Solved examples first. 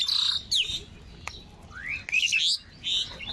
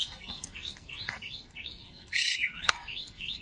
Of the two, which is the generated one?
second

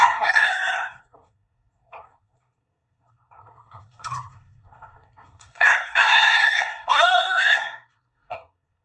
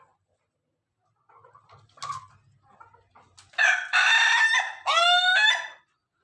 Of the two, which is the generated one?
first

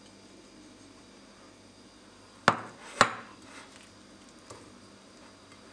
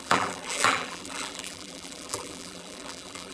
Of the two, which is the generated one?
second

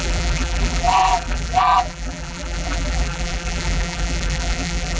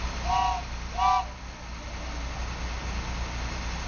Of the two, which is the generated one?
first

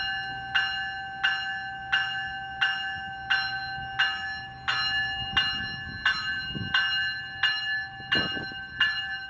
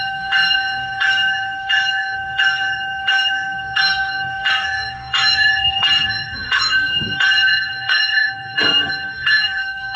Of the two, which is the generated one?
second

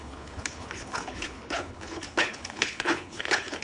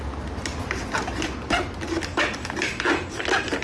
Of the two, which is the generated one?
first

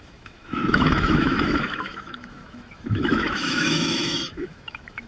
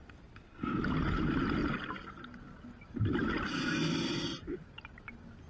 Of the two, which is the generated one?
first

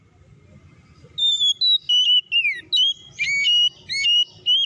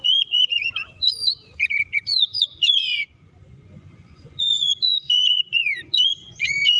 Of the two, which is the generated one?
second